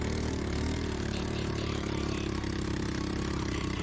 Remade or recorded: remade